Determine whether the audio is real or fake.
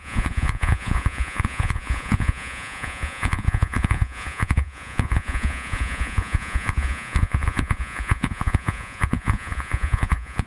fake